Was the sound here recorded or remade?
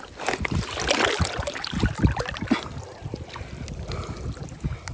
recorded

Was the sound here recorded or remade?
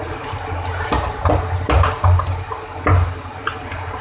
recorded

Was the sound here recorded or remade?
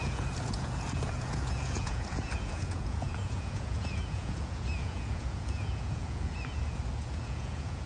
remade